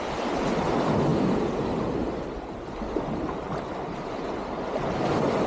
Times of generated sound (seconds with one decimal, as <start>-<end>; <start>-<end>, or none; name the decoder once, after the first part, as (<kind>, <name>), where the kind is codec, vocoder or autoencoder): none